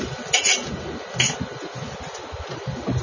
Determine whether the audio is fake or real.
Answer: real